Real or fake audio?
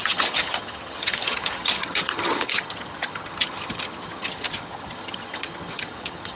fake